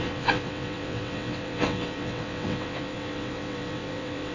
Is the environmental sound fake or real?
fake